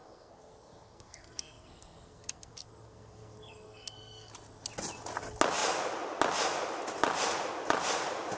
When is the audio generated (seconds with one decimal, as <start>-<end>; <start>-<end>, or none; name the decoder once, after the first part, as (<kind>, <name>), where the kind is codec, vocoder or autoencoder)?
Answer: 0.0-4.3 (codec, SNAC)